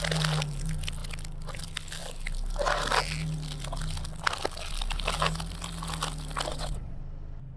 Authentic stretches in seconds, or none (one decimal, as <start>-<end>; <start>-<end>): 0.0-6.5; 7.0-7.6